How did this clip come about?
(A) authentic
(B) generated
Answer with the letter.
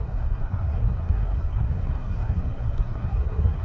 B